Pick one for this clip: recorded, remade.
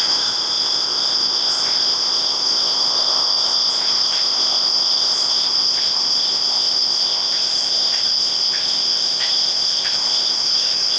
remade